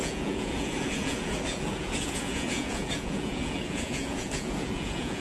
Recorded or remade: remade